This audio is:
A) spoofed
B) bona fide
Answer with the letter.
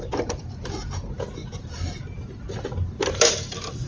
B